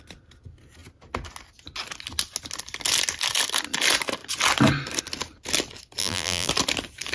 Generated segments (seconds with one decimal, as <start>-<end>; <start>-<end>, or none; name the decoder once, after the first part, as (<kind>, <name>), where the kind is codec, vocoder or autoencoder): 6.0-6.5 (vocoder, BigVGAN v2)